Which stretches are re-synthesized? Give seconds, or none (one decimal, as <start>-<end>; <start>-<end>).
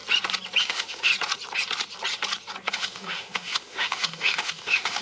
0.6-1.1; 2.7-5.0